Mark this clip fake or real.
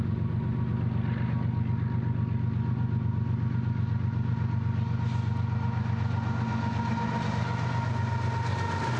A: real